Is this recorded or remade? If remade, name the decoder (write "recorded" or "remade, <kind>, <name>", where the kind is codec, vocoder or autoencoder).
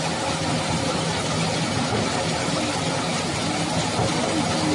recorded